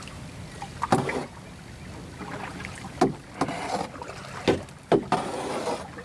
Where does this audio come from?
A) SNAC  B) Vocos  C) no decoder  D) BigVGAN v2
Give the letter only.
C